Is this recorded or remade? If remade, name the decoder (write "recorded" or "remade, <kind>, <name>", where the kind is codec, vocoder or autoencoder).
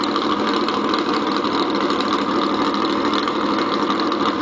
remade, vocoder, BigVGAN v2